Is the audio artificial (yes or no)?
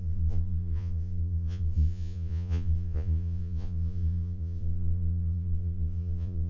yes